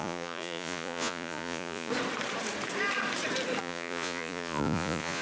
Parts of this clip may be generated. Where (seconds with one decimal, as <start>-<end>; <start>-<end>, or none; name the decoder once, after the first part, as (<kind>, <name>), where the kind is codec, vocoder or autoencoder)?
0.0-1.9 (vocoder, Vocos); 3.6-5.2